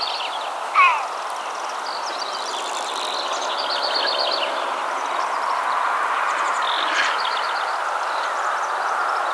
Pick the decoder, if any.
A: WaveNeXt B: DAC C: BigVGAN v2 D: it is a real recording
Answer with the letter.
D